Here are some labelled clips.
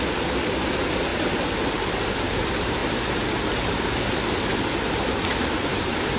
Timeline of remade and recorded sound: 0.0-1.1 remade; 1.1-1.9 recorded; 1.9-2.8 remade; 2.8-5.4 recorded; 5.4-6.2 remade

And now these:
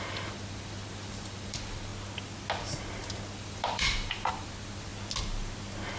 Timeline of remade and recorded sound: 0.0-1.9 remade; 1.9-3.3 recorded; 3.3-4.9 remade; 4.9-6.0 recorded

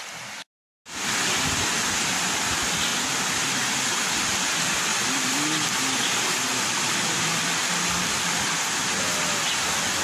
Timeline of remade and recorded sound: 0.0-2.9 recorded; 2.9-3.6 remade; 3.6-4.9 recorded; 4.9-9.0 remade; 9.0-10.0 recorded

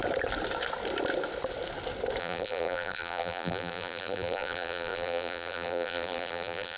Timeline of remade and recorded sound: 0.0-2.2 recorded; 2.2-6.8 remade

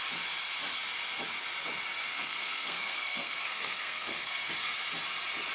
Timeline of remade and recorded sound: 0.0-2.1 recorded; 2.1-4.5 remade; 4.5-5.5 recorded